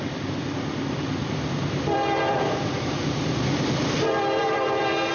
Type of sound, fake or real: fake